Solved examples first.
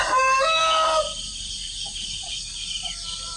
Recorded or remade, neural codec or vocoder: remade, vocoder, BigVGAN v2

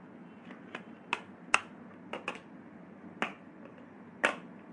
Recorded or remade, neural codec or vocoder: recorded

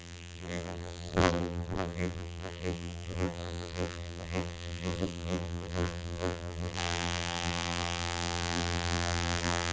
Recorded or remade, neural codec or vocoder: remade, vocoder, BigVGAN v2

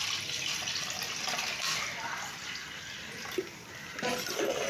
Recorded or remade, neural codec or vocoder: recorded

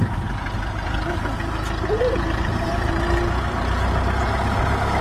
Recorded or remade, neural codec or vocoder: remade, vocoder, BigVGAN v2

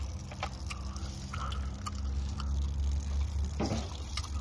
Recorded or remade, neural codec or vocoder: recorded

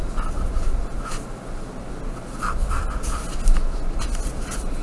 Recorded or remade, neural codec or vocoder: recorded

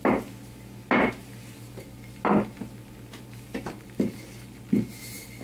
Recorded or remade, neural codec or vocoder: recorded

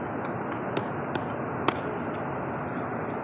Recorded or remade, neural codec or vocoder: recorded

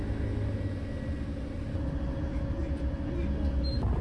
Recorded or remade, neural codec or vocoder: recorded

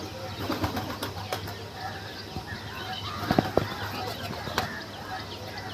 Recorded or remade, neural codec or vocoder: recorded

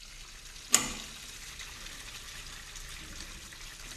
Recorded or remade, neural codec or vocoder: recorded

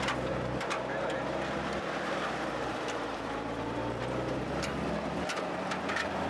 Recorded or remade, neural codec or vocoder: remade, vocoder, BigVGAN v2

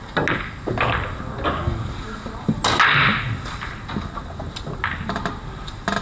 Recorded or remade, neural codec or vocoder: recorded